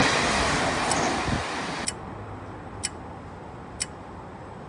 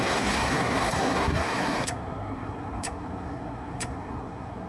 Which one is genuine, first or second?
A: first